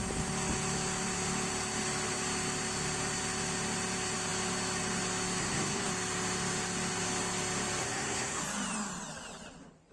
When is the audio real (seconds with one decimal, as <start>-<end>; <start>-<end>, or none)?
0.0-5.4; 5.9-7.8; 8.4-9.9